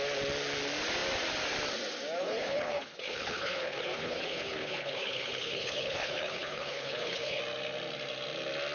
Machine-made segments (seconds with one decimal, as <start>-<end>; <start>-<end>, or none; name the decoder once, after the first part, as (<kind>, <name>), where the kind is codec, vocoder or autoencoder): 2.2-7.4 (codec, HILCodec)